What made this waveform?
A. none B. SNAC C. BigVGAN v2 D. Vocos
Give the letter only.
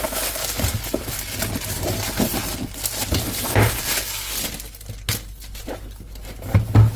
A